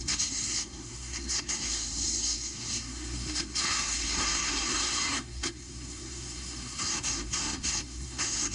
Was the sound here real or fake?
fake